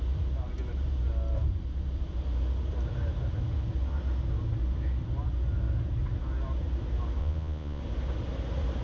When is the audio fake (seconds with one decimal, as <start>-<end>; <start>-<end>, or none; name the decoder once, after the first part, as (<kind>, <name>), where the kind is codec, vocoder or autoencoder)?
7.2-7.8 (vocoder, Vocos)